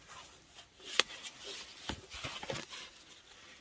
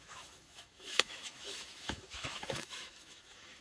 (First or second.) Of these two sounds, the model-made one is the second